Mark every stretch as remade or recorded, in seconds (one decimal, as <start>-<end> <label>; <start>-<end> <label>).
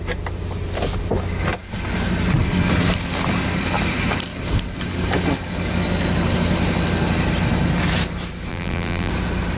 0.0-8.5 recorded; 8.5-9.1 remade; 9.1-9.6 recorded